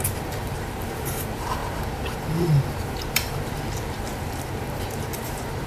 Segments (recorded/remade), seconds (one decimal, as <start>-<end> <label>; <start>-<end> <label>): 0.0-5.7 remade